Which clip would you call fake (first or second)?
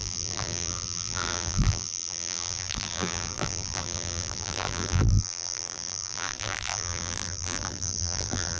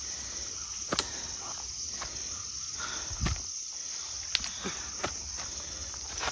first